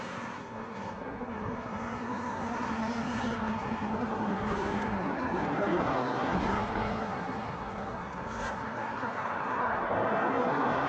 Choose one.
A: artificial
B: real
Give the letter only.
A